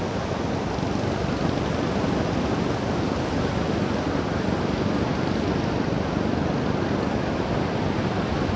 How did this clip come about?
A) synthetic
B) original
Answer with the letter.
B